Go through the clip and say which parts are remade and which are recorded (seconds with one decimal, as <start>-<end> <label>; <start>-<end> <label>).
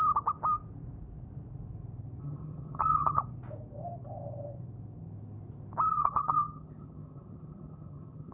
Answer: 0.0-2.2 recorded; 2.2-3.2 remade; 3.2-5.9 recorded; 5.9-8.3 remade